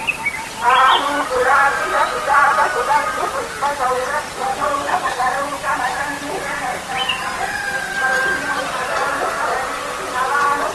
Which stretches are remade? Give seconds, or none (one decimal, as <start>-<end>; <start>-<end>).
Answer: 4.5-5.2